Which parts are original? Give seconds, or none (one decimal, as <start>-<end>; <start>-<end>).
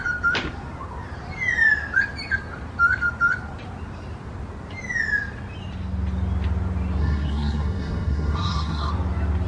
0.0-7.0; 8.9-9.5